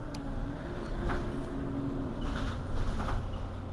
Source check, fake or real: real